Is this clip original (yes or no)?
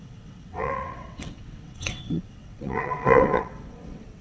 no